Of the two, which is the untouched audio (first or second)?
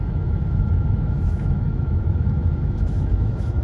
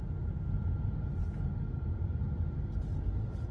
second